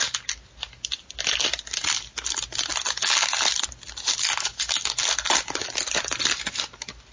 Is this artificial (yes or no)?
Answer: no